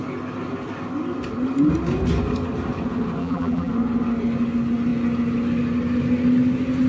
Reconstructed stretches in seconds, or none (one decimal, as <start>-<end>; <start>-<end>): 3.2-3.7

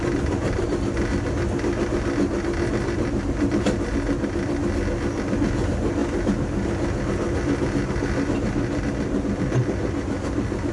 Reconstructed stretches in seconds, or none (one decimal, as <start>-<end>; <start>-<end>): none

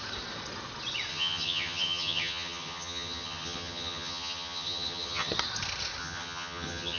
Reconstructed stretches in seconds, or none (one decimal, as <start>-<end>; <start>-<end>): 1.1-5.3; 6.0-7.0

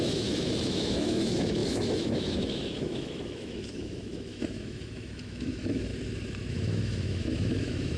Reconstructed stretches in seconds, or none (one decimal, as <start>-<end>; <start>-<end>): 0.0-5.9; 6.5-8.0